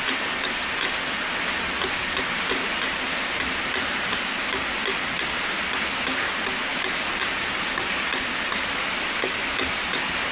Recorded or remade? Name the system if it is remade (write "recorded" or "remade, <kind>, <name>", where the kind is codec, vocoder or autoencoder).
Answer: recorded